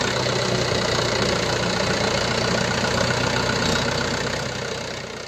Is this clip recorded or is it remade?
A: recorded